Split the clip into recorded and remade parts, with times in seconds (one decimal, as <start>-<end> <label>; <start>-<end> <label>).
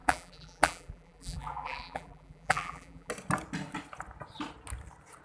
0.0-3.1 remade; 3.1-5.2 recorded